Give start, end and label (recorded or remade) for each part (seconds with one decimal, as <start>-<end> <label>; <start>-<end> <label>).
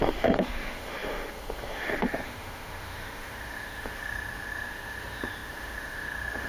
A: 0.0-6.5 remade